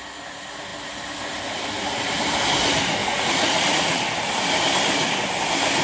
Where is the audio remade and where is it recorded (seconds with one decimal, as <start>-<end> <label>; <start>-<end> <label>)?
0.0-3.0 recorded; 3.0-4.0 remade; 4.0-5.8 recorded